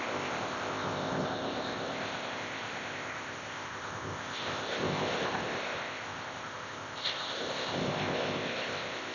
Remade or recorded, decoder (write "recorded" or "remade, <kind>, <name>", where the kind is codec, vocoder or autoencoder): remade, codec, ZipCodec